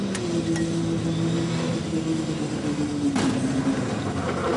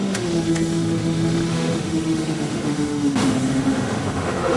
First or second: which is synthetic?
second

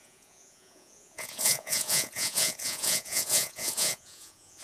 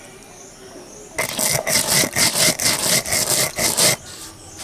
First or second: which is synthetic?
first